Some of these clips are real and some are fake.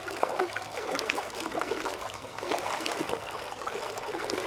fake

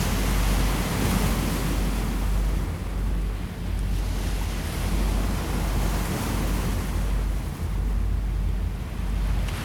real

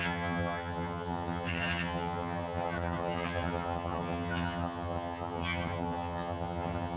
fake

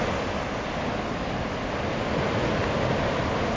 real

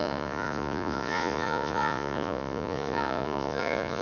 fake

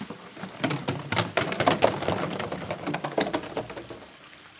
real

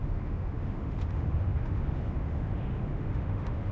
fake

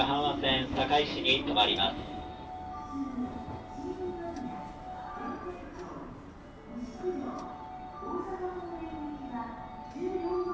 real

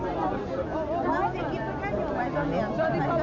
real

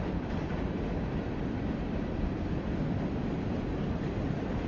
fake